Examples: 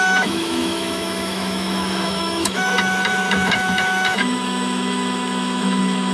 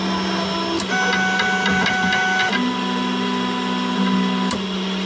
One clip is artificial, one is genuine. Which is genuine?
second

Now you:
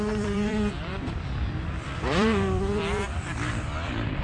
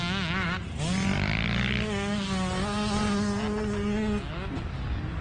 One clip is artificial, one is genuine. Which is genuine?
second